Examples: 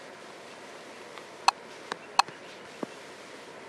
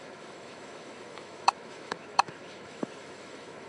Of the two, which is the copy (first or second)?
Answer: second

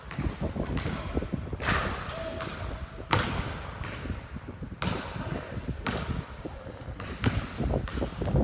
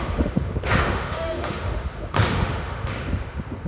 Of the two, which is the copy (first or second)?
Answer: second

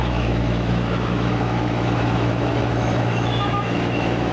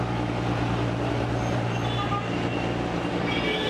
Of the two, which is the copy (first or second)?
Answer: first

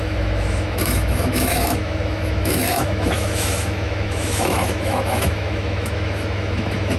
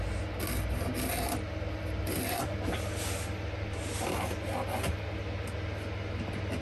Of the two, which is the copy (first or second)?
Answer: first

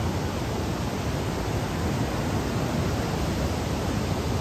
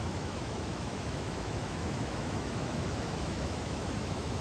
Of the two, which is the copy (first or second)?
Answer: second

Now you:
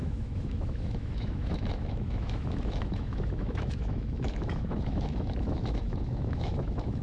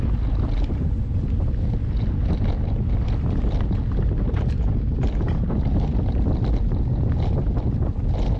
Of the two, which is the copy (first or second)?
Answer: first